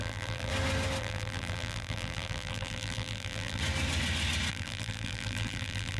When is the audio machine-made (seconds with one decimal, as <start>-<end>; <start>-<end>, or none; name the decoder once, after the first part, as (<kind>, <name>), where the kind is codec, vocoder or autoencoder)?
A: 0.0-0.5 (vocoder, BigVGAN v2); 1.0-3.6; 4.5-6.0